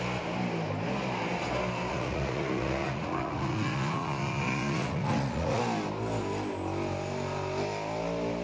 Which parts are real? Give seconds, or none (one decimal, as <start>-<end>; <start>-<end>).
0.0-1.9; 5.6-8.4